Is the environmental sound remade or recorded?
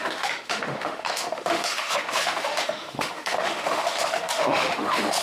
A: remade